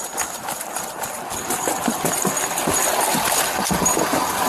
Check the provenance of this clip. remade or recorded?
recorded